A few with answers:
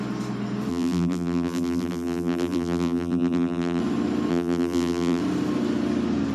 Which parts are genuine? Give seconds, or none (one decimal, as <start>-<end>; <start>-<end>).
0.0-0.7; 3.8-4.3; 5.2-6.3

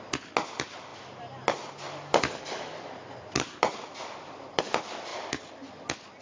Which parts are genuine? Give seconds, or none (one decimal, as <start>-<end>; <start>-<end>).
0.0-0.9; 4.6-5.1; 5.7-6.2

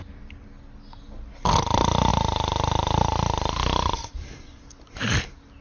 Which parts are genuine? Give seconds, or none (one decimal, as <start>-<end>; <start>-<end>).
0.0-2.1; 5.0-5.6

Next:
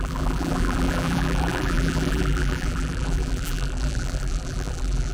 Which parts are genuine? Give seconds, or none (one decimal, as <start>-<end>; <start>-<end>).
none

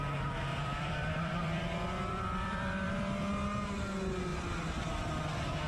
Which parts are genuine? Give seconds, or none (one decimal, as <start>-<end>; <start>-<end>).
0.0-0.5; 2.9-5.7

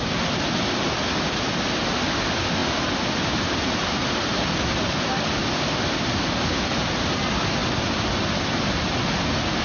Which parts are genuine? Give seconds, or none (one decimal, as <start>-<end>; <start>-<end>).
0.0-9.6

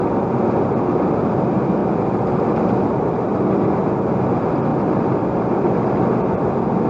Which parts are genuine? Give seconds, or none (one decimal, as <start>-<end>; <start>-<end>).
0.0-1.8; 4.2-4.7; 6.1-6.9

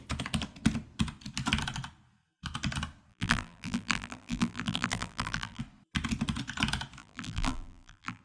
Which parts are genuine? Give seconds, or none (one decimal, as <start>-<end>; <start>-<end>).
0.0-3.1; 5.6-7.0